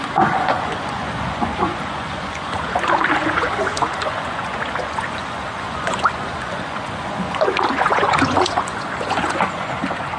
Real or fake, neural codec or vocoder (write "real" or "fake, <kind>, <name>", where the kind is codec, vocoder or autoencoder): fake, vocoder, Vocos